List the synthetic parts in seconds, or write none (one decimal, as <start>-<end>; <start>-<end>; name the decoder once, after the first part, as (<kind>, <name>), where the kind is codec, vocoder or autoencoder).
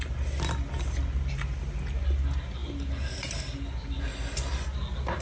none